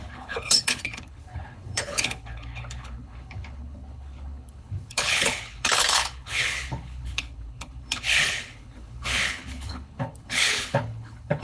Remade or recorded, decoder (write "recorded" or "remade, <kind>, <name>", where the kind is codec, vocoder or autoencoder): remade, codec, HILCodec